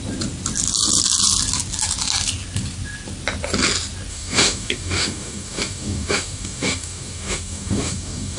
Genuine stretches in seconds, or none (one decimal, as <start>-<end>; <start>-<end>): 0.0-4.1